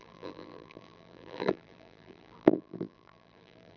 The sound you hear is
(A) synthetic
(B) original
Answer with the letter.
A